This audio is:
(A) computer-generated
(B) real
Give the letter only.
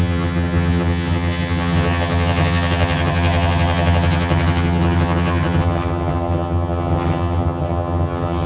A